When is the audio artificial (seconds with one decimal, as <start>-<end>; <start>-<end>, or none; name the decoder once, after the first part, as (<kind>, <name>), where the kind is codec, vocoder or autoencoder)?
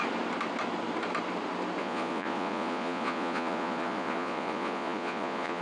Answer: 1.8-5.6 (vocoder, Vocos)